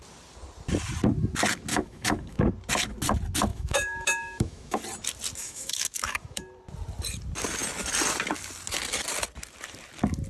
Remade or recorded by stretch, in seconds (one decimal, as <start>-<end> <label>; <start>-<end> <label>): 0.0-1.7 recorded; 1.7-2.5 remade; 2.5-3.5 recorded; 3.5-4.8 remade; 4.8-5.4 recorded; 5.4-6.4 remade; 6.4-10.3 recorded

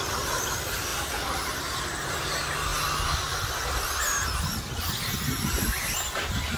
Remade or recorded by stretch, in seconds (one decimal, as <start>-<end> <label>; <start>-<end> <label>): 0.0-0.9 recorded; 0.9-1.5 remade; 1.5-6.6 recorded

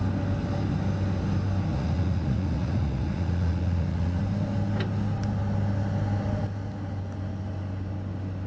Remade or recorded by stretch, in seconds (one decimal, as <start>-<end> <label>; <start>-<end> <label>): 0.0-1.7 recorded; 1.7-4.2 remade; 4.2-8.5 recorded

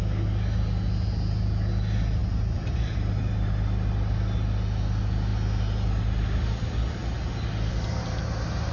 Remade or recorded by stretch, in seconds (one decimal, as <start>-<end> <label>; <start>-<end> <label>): 0.0-2.2 recorded; 2.2-3.3 remade; 3.3-8.7 recorded

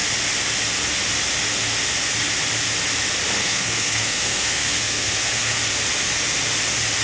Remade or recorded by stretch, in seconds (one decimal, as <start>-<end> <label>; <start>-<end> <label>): 0.0-3.4 recorded; 3.4-5.6 remade; 5.6-7.0 recorded

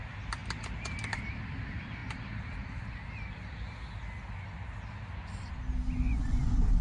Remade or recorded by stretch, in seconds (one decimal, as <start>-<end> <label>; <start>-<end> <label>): 0.0-2.0 recorded; 2.0-2.8 remade; 2.8-6.8 recorded

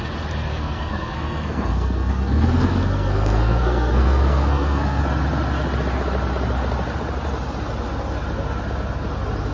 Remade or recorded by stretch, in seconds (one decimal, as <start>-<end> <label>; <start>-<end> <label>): 0.0-0.5 recorded; 0.5-5.0 remade; 5.0-9.5 recorded

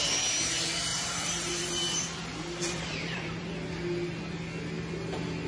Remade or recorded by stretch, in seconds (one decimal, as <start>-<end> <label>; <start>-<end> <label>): 0.0-0.9 recorded; 0.9-3.5 remade; 3.5-5.5 recorded